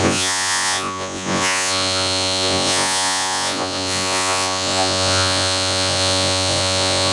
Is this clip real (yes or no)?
no